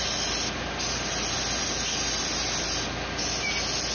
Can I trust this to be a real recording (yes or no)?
yes